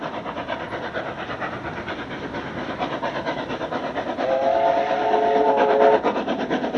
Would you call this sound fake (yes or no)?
no